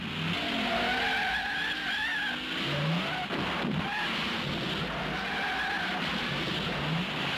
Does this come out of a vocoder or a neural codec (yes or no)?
no